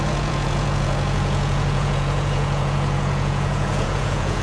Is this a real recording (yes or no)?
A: no